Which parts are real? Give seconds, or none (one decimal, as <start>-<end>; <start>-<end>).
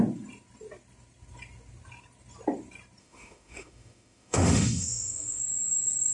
0.0-3.0; 5.4-6.1